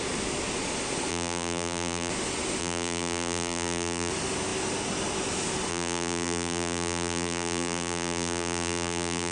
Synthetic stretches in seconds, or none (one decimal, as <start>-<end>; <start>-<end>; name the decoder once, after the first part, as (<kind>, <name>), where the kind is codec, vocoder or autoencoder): 1.1-2.1 (vocoder, BigVGAN v2); 2.6-4.1; 5.7-9.3